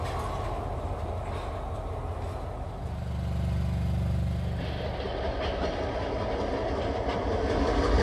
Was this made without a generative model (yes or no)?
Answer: yes